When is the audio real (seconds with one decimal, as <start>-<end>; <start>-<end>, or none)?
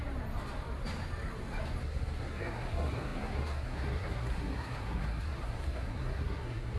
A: 0.0-1.8